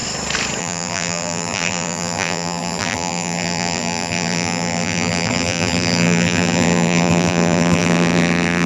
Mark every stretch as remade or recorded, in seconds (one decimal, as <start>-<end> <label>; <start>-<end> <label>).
0.0-0.6 recorded; 0.6-8.7 remade